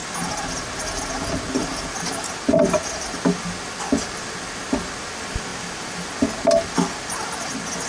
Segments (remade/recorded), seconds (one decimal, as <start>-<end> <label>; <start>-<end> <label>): 0.0-7.9 recorded